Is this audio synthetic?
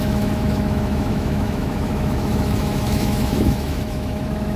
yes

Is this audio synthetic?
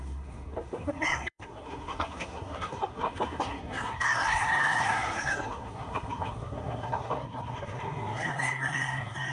yes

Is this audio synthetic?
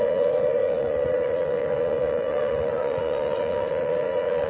yes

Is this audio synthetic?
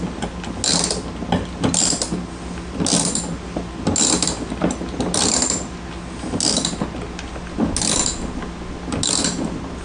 no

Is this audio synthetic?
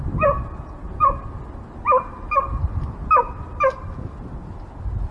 no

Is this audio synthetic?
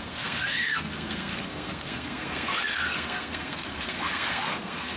yes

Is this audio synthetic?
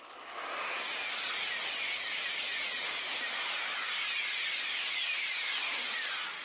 no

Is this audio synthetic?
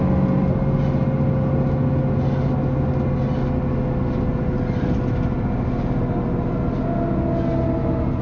no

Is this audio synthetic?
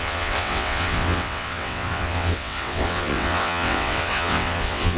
yes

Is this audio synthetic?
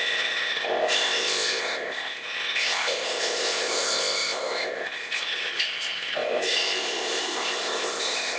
yes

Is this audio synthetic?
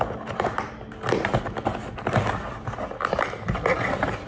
no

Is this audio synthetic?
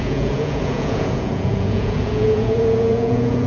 yes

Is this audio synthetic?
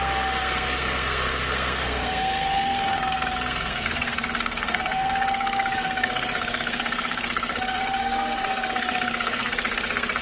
yes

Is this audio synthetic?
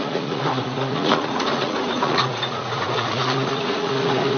yes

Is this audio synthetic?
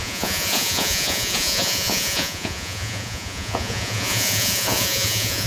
yes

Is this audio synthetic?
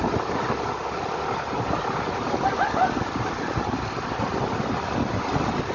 no